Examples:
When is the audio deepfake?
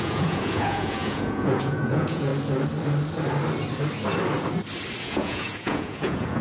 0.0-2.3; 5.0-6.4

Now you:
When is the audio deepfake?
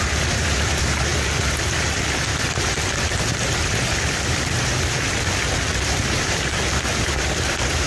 0.0-7.9